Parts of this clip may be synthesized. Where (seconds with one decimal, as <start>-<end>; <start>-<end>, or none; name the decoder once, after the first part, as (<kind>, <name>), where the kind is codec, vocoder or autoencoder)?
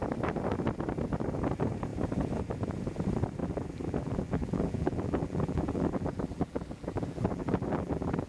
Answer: 3.4-8.3 (vocoder, BigVGAN v2)